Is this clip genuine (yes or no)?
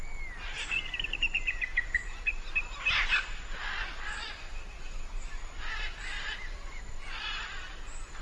yes